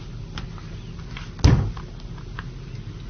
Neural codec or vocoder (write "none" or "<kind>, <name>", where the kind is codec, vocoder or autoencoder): none